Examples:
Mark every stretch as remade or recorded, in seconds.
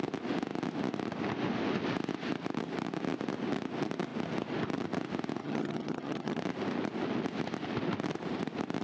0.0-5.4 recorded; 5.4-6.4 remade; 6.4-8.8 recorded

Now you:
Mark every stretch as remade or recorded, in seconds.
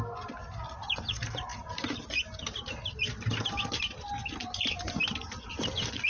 0.0-6.1 recorded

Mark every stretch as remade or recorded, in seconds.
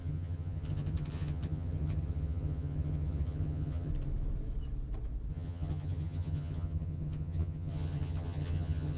0.0-3.9 remade; 3.9-5.3 recorded; 5.3-9.0 remade